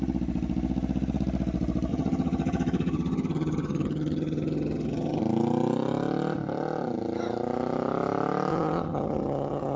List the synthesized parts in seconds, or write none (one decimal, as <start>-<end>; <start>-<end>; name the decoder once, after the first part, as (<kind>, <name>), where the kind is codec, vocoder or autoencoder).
1.9-5.2 (vocoder, HiFi-GAN); 8.5-9.8